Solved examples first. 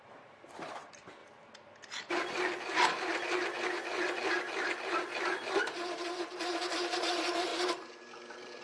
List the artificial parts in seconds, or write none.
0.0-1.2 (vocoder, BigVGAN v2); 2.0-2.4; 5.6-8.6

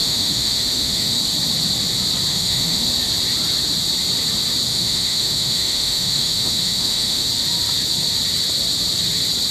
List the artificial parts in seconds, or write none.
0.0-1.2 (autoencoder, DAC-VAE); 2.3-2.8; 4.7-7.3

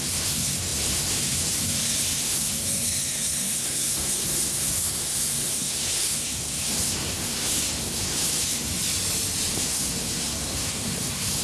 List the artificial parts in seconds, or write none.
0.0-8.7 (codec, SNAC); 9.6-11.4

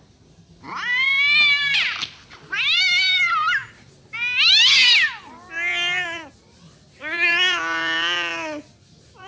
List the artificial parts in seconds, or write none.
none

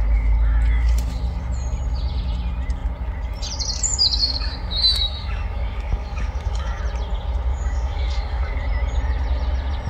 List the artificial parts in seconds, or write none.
4.2-6.8 (codec, DAC); 7.5-8.6

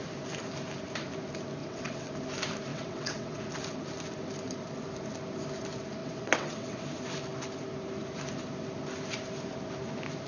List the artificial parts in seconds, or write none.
1.6-2.1 (vocoder, WaveNeXt); 2.7-3.4; 6.0-6.8

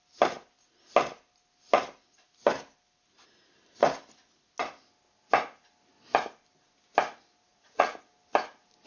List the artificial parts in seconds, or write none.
7.5-8.0 (vocoder, Vocos)

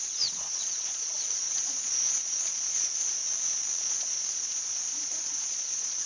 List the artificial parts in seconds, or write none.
0.0-3.2 (vocoder, Vocos); 3.8-6.1